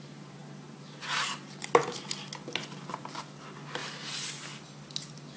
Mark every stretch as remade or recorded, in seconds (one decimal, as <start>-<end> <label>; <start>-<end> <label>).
0.0-5.4 recorded